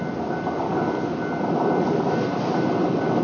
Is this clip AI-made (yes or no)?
no